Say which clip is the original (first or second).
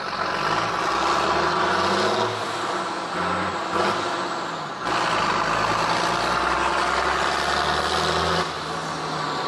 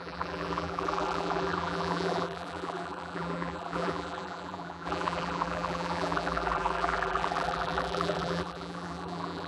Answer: first